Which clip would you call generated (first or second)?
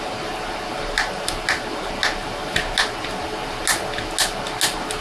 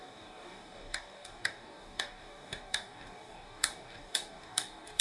second